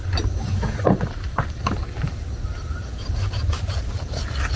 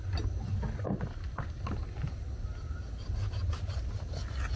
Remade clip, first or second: first